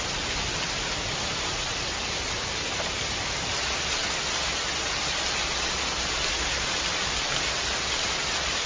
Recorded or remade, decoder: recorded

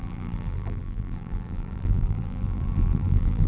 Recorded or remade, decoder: remade, vocoder, BigVGAN v2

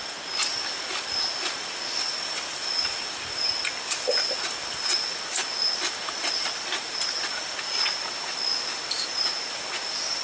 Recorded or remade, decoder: recorded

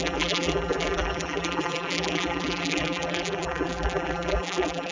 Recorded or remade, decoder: remade, vocoder, BigVGAN v2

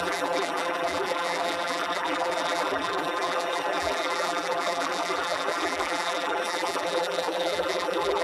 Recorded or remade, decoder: remade, vocoder, BigVGAN v2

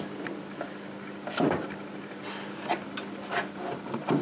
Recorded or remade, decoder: recorded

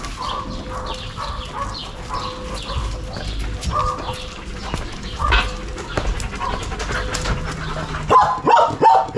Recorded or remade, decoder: recorded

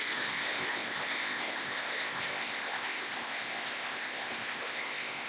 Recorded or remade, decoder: remade, codec, ZipCodec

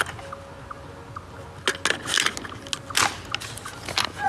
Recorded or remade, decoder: recorded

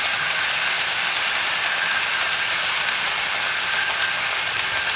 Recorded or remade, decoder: recorded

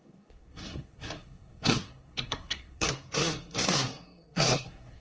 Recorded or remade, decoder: remade, codec, SNAC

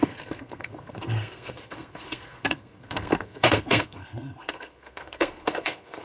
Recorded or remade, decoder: remade, codec, SNAC